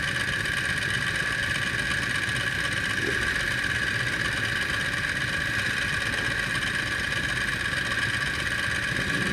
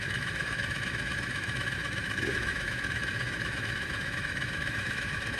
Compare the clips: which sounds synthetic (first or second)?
second